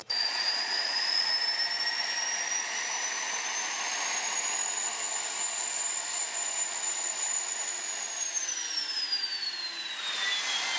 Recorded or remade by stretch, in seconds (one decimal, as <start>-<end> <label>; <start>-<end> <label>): 0.0-1.3 remade; 1.3-10.8 recorded